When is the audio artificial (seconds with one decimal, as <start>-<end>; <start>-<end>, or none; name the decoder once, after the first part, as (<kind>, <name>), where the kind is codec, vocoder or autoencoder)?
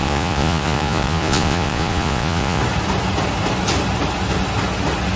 0.0-2.6 (vocoder, Vocos)